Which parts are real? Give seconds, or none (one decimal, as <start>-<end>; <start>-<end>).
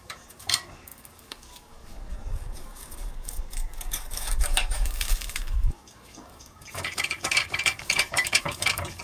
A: none